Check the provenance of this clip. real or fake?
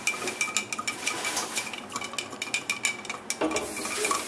real